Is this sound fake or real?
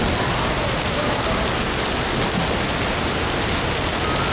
real